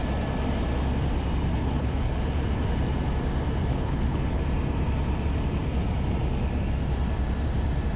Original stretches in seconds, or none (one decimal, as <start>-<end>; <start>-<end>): 0.0-1.6; 2.2-3.7; 4.4-8.0